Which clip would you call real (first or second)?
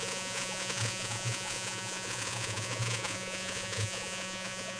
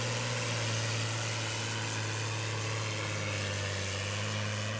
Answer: second